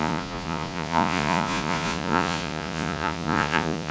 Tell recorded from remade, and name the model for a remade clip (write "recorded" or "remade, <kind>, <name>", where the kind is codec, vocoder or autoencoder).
remade, vocoder, Vocos